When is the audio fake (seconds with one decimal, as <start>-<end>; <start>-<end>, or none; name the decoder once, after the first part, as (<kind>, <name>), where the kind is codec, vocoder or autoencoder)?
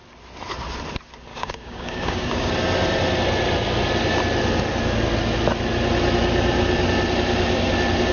1.3-2.5 (codec, DAC)